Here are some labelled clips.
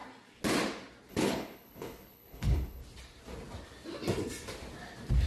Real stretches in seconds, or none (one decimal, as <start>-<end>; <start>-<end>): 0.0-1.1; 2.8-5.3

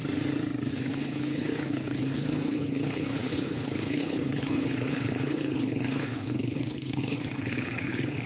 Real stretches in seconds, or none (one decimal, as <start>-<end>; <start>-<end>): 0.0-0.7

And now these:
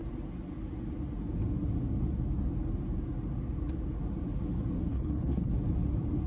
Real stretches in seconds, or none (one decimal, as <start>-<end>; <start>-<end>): 0.0-4.9; 5.5-6.3

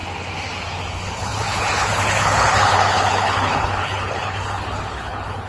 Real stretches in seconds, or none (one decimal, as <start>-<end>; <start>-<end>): 0.0-0.9

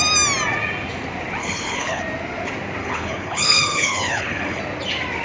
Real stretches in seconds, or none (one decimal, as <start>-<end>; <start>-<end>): 0.0-1.4; 2.0-2.8; 4.6-5.2